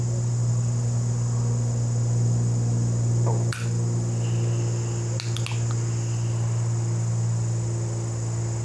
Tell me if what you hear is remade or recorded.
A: recorded